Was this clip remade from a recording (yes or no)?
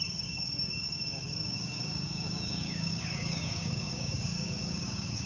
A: yes